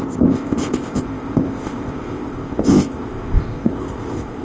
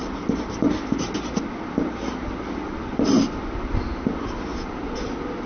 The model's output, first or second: first